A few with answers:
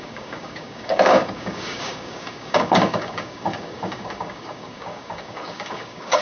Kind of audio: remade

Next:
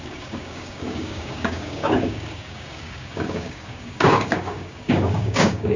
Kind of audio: remade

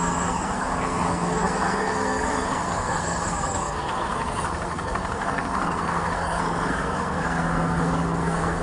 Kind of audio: remade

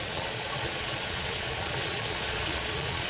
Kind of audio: remade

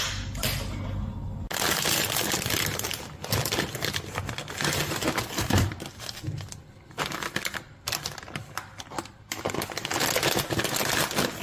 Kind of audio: recorded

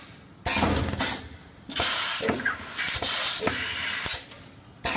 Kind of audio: recorded